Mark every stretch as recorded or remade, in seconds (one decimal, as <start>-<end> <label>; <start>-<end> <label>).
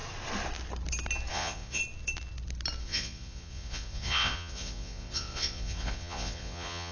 0.0-1.3 recorded; 1.3-1.8 remade; 1.8-2.8 recorded; 2.8-6.9 remade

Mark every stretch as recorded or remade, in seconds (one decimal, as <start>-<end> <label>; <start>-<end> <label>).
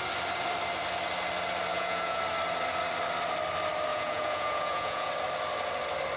0.0-1.7 recorded; 1.7-2.2 remade; 2.2-3.9 recorded; 3.9-5.1 remade; 5.1-6.2 recorded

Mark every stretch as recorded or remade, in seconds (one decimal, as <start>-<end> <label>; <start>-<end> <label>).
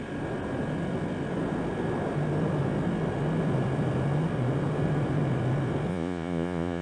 0.0-5.9 recorded; 5.9-6.8 remade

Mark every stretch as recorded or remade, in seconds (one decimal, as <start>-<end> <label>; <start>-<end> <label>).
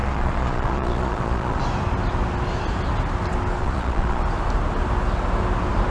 0.0-1.6 remade; 1.6-3.6 recorded; 3.6-4.2 remade; 4.2-5.9 recorded